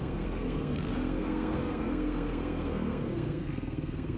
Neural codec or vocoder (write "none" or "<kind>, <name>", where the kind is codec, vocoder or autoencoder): codec, SNAC